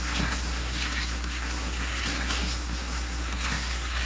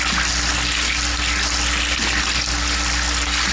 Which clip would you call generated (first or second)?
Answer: first